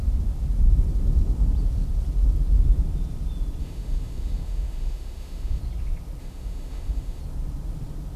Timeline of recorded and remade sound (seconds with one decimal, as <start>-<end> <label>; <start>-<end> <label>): 0.0-3.6 recorded; 3.6-5.6 remade; 5.6-6.2 recorded; 6.2-7.2 remade; 7.2-8.2 recorded